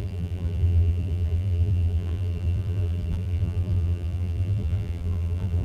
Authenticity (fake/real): fake